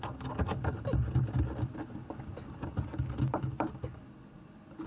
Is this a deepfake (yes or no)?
no